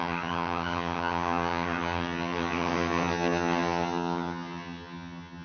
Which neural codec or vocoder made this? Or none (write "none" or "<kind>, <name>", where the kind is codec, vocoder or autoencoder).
vocoder, HiFi-GAN